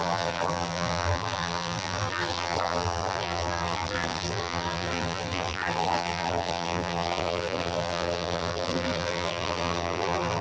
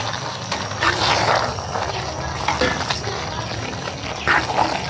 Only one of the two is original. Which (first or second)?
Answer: second